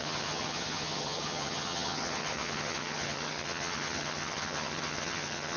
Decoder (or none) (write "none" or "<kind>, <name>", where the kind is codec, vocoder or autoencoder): vocoder, HiFi-GAN